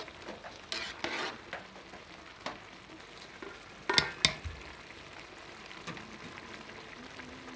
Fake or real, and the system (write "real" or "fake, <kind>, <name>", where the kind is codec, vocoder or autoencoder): real